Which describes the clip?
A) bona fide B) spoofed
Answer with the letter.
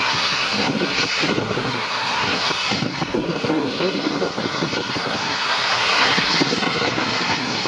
B